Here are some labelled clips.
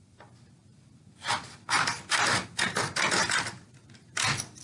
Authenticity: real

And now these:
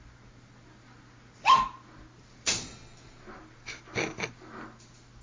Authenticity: real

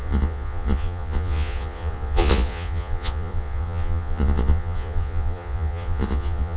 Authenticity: fake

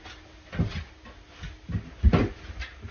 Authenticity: real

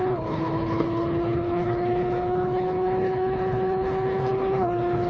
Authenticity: fake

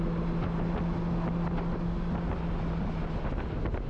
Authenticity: real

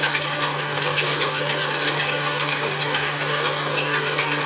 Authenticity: fake